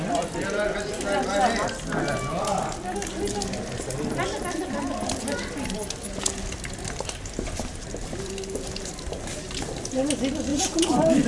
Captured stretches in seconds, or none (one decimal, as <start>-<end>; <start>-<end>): 0.0-10.5